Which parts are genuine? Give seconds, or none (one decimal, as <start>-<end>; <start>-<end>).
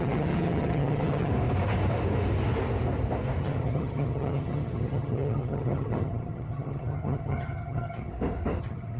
1.3-3.4; 8.1-8.6